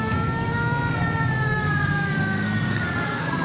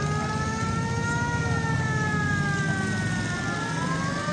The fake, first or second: first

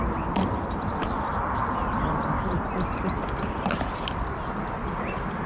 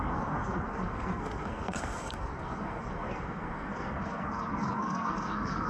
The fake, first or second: second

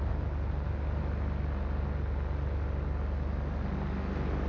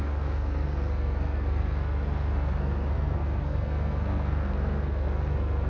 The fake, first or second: second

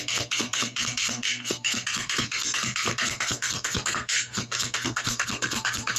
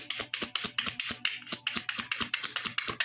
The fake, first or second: first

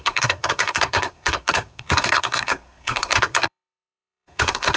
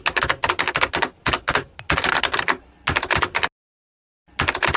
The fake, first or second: first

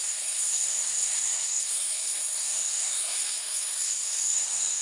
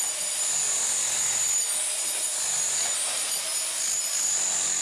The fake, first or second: first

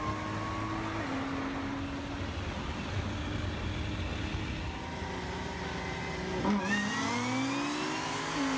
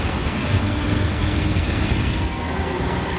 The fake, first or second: second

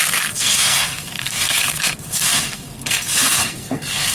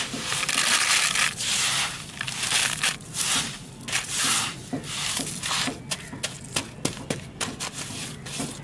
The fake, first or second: first